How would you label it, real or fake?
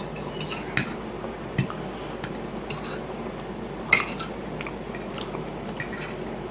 real